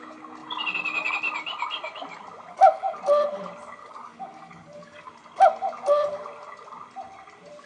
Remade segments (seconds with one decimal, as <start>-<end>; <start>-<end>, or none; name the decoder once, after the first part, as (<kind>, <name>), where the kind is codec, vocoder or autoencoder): 2.5-3.0 (codec, DAC); 3.8-5.1